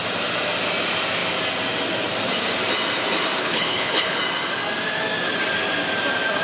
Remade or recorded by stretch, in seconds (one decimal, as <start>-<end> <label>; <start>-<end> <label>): 0.0-3.4 recorded; 3.4-4.2 remade; 4.2-6.4 recorded